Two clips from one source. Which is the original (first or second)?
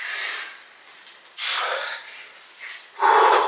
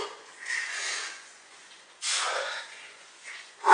first